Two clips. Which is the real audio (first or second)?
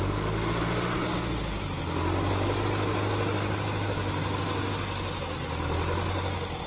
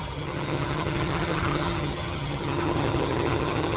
first